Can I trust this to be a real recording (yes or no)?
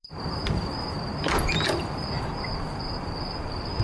no